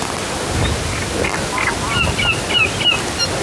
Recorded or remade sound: recorded